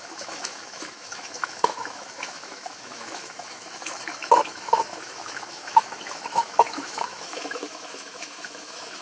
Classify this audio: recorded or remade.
remade